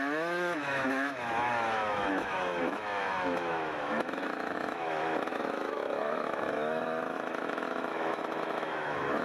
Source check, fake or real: fake